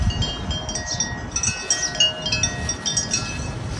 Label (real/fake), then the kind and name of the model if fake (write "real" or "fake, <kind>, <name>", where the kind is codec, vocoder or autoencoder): real